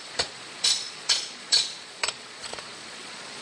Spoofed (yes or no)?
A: yes